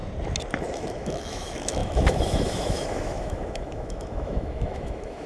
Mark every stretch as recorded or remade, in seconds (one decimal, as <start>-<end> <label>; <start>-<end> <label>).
0.0-0.6 recorded; 0.6-5.3 remade